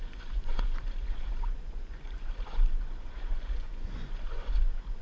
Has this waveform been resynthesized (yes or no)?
yes